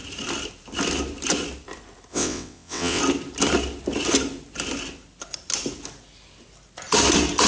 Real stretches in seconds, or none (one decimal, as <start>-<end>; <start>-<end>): 0.0-2.1; 3.0-7.5